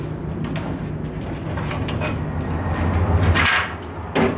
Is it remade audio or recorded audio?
recorded